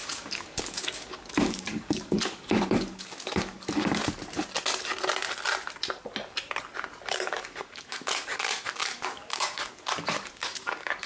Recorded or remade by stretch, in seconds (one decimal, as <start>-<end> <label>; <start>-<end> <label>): 0.0-4.0 remade; 4.0-7.1 recorded; 7.1-11.1 remade